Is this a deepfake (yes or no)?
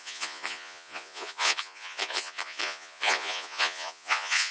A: yes